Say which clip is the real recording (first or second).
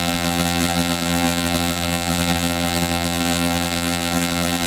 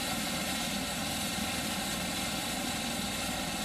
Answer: second